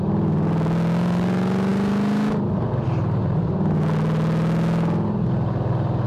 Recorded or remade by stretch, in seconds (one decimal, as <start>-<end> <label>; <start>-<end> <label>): 0.0-6.1 recorded